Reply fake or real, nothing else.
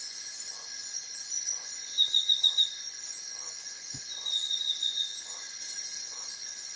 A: fake